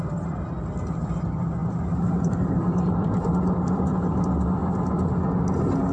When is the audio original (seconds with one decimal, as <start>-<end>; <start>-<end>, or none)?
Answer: 0.0-1.6; 3.8-5.9